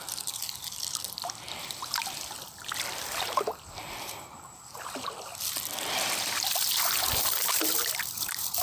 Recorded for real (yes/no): no